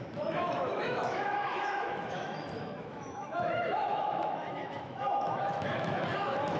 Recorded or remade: remade